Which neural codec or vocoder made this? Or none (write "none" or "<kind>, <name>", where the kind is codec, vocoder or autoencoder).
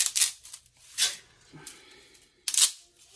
none